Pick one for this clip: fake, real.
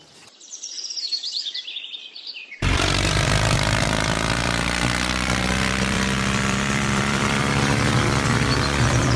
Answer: fake